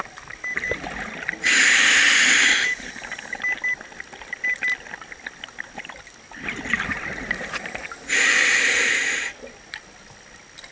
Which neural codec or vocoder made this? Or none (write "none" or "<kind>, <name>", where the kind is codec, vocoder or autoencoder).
none